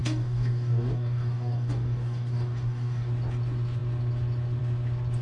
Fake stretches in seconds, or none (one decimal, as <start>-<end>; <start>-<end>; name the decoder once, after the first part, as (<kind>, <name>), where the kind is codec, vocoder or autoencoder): 0.0-3.1 (codec, DAC)

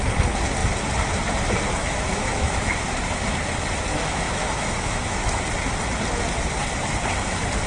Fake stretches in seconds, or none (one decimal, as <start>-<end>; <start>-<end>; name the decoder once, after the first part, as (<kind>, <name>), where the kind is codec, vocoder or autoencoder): 1.8-2.8 (autoencoder, DAC-VAE); 3.9-5.4

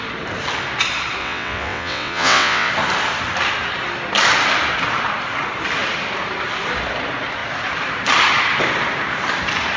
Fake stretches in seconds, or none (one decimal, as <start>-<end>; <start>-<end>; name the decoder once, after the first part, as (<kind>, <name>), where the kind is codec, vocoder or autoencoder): 1.2-2.7 (vocoder, WaveNeXt)

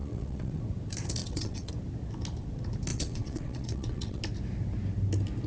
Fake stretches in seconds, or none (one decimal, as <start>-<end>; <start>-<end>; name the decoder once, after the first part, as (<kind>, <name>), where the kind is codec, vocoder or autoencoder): 0.0-0.6 (vocoder, WaveNeXt); 1.2-1.7; 2.9-4.2

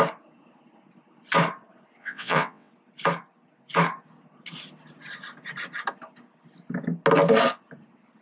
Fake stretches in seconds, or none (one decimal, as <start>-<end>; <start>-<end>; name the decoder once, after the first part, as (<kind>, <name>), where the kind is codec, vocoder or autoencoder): 2.0-2.7 (vocoder, WaveNeXt)

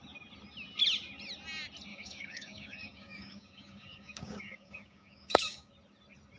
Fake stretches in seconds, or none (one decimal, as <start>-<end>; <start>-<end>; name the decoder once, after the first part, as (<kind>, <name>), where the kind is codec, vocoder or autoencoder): 1.9-5.7 (codec, DAC)

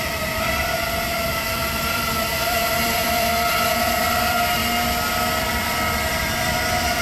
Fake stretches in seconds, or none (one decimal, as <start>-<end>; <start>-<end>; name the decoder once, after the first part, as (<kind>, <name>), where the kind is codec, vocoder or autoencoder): 0.0-4.6 (vocoder, BigVGAN v2); 5.4-7.0

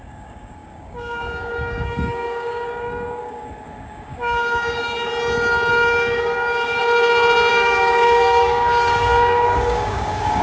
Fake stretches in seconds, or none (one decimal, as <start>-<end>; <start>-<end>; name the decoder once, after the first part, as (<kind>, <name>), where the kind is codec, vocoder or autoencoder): 0.0-5.1 (codec, DAC); 5.7-6.8; 7.5-10.4